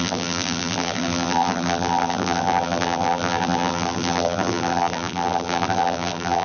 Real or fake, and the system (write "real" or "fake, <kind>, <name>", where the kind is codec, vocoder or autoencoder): fake, vocoder, BigVGAN v2